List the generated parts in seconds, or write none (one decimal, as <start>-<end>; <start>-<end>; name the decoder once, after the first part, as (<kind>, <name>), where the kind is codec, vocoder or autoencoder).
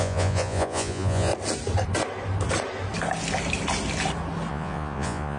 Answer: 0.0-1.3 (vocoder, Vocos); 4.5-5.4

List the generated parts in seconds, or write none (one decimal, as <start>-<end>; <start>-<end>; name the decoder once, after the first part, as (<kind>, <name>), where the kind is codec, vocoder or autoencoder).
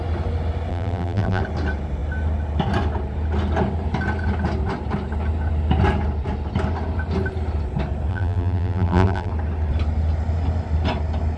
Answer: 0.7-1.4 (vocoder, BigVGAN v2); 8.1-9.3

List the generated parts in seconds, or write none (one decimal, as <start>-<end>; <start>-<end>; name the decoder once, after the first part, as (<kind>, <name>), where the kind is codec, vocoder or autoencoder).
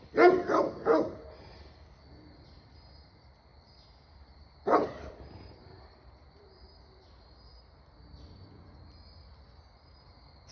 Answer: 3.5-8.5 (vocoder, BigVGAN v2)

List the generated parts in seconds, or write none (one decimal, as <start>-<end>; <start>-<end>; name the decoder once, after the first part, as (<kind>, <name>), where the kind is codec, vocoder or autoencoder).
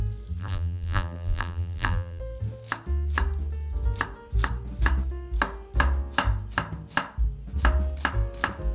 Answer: 0.4-2.2 (vocoder, BigVGAN v2)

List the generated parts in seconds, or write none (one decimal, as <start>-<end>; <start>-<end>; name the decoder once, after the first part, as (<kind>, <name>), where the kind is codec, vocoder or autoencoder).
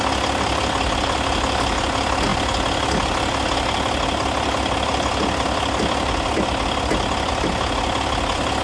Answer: none